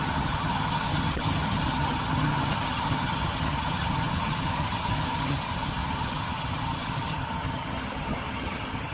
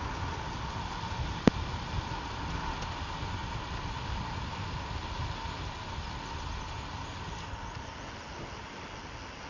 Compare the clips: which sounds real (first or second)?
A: second